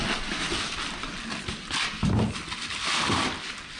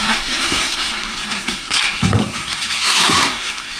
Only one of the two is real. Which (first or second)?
first